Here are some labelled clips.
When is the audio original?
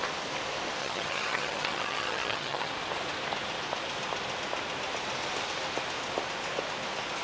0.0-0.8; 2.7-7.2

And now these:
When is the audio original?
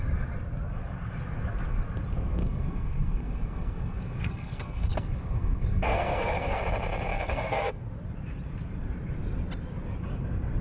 0.0-2.4; 6.6-7.1; 7.8-10.6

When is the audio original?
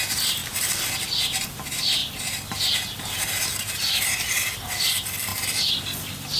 0.0-2.0; 4.0-5.3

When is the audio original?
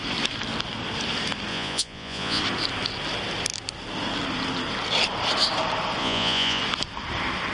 0.0-1.5; 2.4-6.0; 6.6-7.5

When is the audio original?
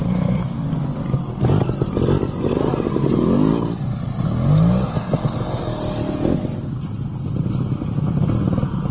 0.0-8.9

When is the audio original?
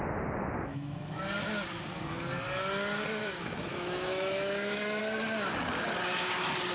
0.0-0.7; 1.2-3.2; 5.0-6.7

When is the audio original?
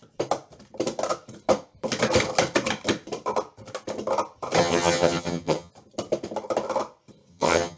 0.0-4.6; 5.7-7.3